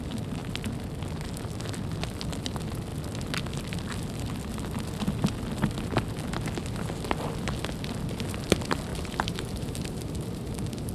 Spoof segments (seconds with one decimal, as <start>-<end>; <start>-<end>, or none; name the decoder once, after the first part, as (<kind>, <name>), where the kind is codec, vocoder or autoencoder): 8.9-10.9 (vocoder, BigVGAN v2)